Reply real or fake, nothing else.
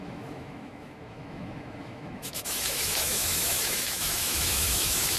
fake